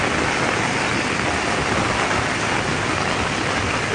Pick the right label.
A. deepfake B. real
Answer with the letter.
B